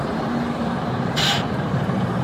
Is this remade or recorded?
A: remade